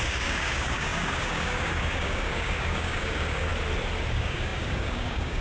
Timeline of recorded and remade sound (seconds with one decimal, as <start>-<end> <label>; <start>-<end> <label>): 0.0-3.5 remade; 3.5-4.1 recorded; 4.1-5.4 remade